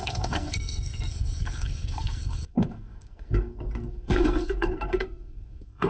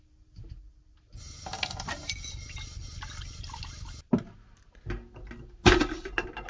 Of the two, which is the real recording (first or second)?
second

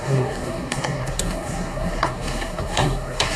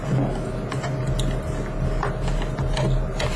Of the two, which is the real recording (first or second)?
second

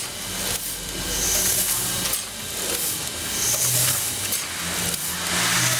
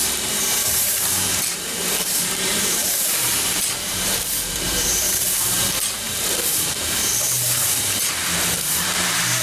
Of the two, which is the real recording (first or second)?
first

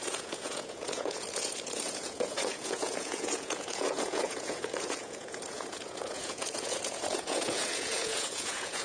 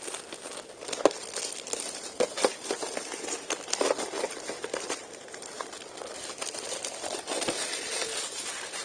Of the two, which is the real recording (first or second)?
second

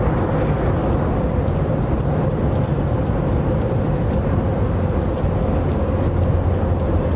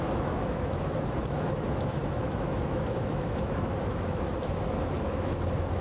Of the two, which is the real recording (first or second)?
first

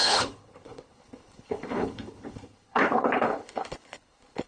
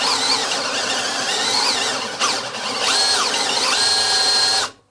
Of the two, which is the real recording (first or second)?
second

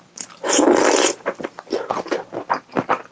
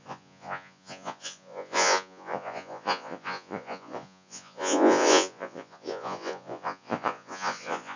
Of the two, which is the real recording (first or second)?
first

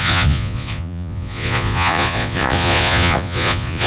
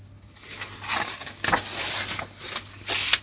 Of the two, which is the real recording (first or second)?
second